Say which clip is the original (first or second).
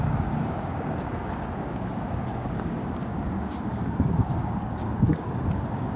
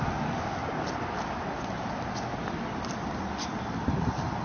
second